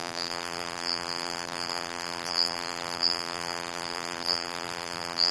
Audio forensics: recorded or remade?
remade